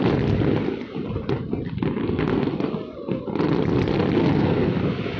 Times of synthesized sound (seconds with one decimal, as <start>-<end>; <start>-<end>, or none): 2.0-2.6; 4.2-4.7